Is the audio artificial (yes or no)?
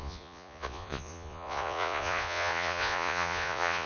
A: yes